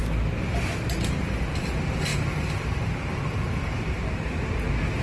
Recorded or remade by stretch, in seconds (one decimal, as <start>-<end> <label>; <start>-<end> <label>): 0.0-0.8 remade; 0.8-5.0 recorded